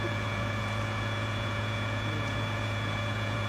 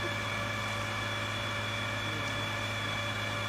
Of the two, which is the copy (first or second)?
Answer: first